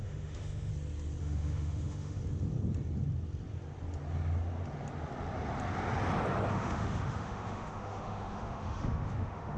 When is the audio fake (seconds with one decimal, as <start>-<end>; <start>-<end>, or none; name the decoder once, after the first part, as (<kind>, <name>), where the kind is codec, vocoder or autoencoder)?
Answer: 0.0-0.7 (autoencoder, DAC-VAE); 1.2-2.2; 6.5-9.6